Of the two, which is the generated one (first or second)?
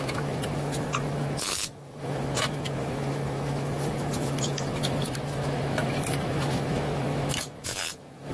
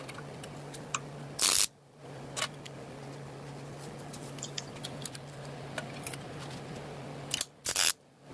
first